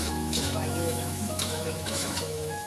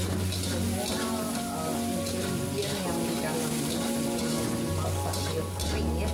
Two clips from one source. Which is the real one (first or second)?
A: second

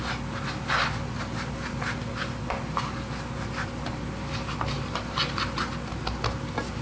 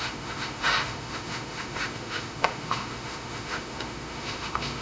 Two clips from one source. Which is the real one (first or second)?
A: first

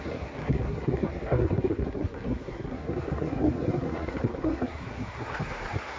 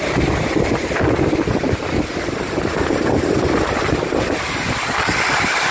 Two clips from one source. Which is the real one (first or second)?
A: second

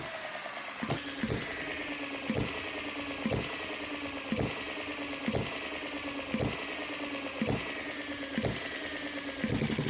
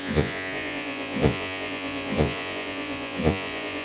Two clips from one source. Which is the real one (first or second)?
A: first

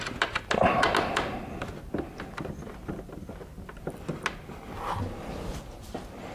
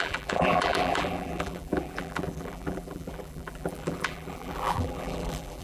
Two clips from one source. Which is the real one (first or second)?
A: first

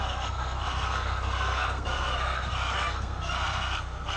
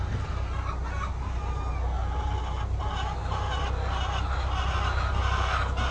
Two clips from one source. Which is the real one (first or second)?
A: second